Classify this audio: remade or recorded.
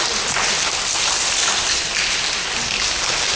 recorded